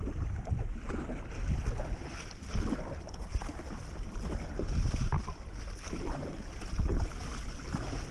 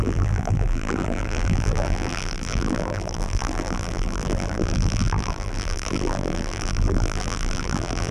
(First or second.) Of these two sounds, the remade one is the second